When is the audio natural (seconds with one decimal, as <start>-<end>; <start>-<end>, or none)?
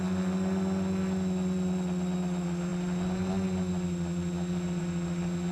0.0-5.5